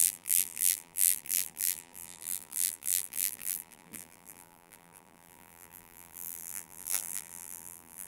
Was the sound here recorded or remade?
remade